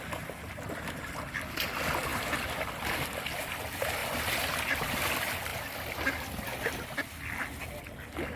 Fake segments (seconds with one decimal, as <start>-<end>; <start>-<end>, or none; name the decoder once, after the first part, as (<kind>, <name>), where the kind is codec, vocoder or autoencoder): none